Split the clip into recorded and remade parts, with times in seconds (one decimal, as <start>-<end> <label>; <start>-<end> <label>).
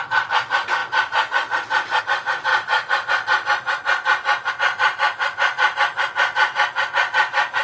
0.0-0.8 remade; 0.8-2.0 recorded; 2.0-2.5 remade; 2.5-4.5 recorded; 4.5-7.6 remade